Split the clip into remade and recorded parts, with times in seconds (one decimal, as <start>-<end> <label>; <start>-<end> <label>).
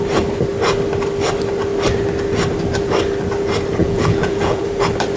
0.0-3.8 recorded; 3.8-4.6 remade; 4.6-5.2 recorded